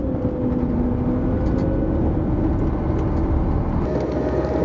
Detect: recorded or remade recorded